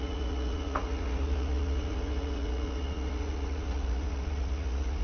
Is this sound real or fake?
fake